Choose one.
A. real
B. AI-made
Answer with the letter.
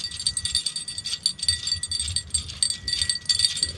A